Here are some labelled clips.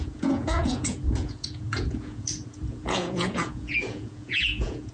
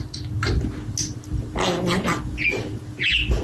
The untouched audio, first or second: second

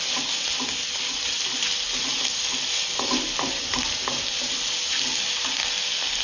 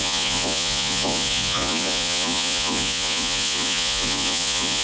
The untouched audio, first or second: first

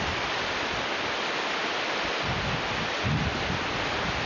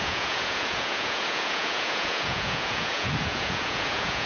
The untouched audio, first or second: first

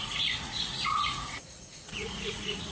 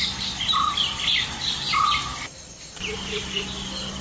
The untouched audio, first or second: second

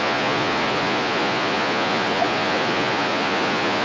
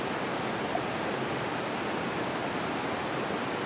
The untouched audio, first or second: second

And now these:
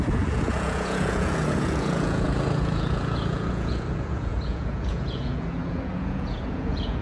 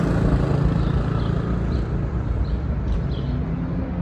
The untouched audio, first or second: second